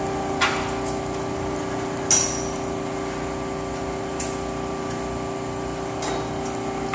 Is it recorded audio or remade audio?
recorded